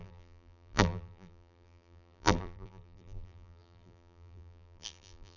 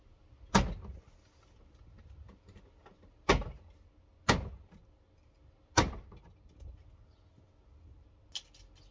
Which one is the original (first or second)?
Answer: second